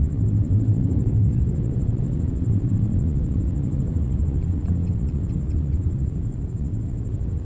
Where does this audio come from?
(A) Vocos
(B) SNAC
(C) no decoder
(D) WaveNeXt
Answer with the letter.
D